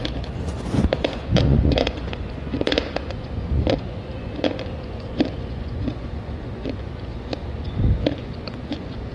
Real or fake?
fake